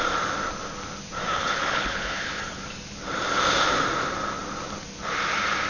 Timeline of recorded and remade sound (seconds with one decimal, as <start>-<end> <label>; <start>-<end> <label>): 0.0-1.3 recorded; 1.3-2.6 remade; 2.6-5.7 recorded